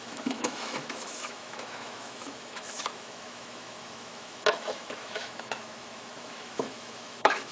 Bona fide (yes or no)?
no